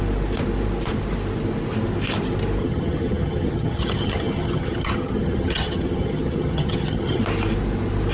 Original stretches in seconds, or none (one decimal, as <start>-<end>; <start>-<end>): 0.0-2.6; 7.2-8.1